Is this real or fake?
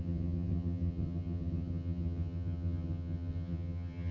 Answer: fake